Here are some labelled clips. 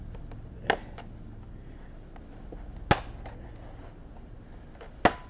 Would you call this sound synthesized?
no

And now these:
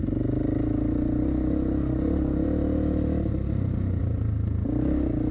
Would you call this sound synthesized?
no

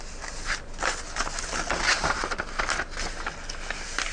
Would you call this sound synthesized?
no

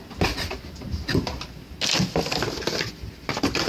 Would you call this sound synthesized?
no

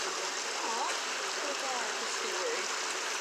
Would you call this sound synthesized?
no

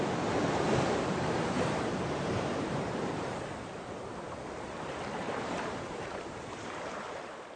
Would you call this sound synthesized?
yes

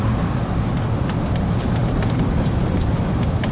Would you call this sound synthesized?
yes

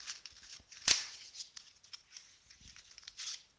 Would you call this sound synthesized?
no